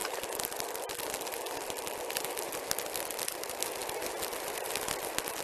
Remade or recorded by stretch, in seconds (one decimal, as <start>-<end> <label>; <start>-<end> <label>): 0.0-5.4 recorded